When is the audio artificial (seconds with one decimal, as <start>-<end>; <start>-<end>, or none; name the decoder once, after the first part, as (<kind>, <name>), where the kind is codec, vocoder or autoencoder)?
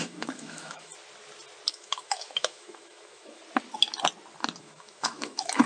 0.0-0.9 (autoencoder, DAC-VAE); 1.7-3.4; 4.6-5.7